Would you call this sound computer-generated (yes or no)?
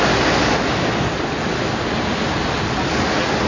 no